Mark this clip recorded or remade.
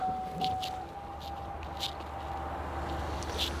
recorded